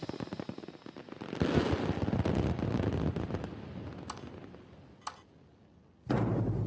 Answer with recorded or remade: recorded